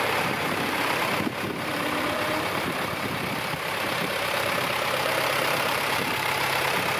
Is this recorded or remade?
remade